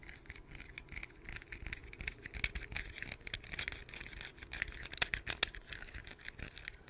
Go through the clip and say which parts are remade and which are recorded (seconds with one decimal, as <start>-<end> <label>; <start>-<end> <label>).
0.0-6.9 recorded